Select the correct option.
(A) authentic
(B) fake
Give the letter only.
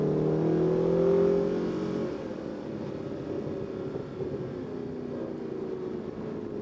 A